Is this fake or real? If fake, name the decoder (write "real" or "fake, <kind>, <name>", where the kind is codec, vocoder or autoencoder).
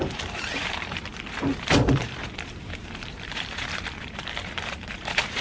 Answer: fake, vocoder, BigVGAN v2